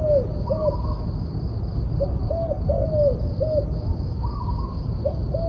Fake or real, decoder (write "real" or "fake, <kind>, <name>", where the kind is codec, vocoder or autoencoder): real